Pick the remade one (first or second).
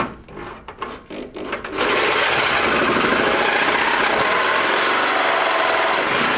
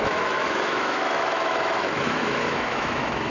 second